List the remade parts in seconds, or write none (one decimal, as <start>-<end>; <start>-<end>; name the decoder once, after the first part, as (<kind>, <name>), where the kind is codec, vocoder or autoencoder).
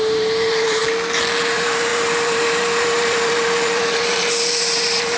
0.0-0.8 (vocoder, BigVGAN v2); 1.4-5.2